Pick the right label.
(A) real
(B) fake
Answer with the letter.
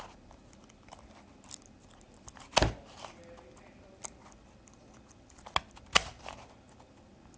A